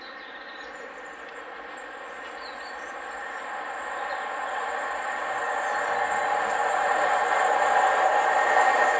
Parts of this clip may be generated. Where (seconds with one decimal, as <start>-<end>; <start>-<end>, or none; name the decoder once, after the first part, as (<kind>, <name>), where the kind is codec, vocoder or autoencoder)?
none